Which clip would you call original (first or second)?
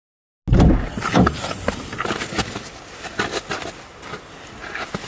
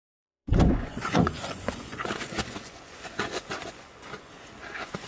first